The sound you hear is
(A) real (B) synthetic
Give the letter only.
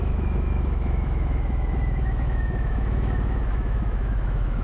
B